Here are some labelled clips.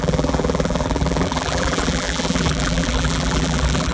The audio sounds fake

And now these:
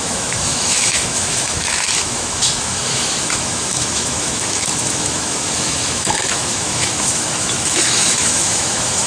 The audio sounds fake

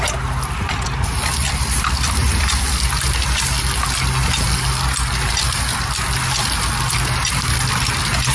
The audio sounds real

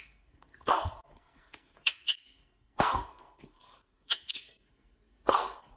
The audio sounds fake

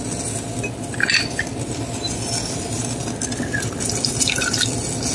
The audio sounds real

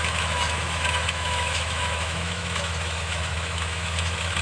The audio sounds fake